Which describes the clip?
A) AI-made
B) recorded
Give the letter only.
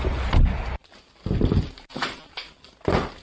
B